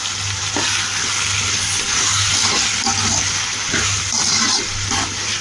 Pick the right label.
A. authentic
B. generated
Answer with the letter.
A